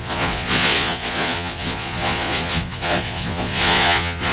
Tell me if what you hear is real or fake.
fake